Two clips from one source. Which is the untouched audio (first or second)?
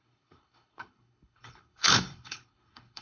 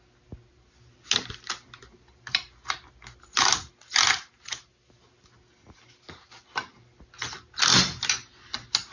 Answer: second